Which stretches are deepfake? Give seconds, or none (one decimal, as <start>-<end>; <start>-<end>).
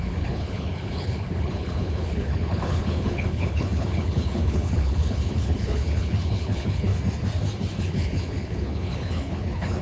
0.0-6.9; 7.8-9.8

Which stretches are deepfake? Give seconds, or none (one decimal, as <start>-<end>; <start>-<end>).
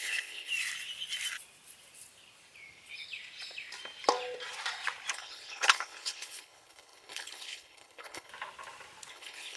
0.0-0.5; 5.1-8.3; 9.1-9.6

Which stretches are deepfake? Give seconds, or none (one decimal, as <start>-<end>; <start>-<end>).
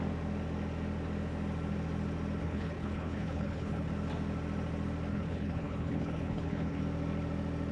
2.4-3.9; 5.1-6.8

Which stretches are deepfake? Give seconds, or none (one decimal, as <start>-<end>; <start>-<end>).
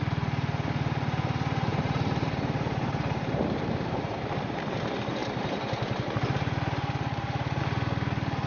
1.7-4.7; 5.2-7.6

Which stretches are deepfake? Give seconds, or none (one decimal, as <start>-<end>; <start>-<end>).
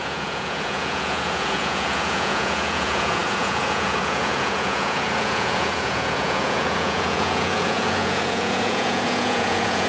0.0-9.9